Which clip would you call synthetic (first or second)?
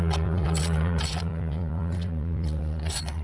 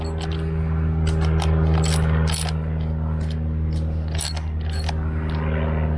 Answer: first